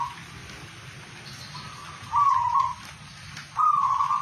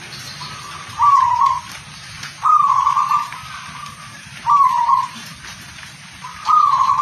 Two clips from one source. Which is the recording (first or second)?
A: first